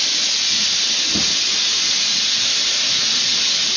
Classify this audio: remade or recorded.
recorded